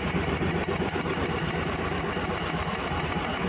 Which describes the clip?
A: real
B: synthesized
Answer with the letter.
A